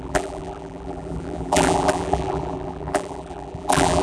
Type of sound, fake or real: fake